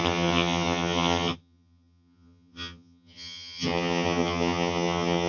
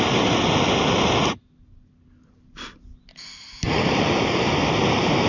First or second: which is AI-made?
first